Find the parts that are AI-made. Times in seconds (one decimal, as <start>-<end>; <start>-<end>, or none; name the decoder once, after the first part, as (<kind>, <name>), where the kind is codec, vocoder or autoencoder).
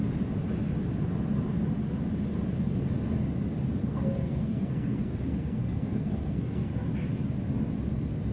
3.8-6.9 (codec, SNAC)